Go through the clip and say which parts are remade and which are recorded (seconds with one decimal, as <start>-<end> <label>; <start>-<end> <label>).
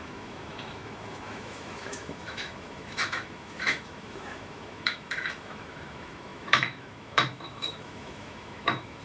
0.0-9.0 remade